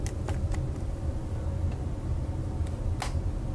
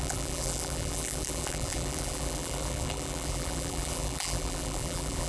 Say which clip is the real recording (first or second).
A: first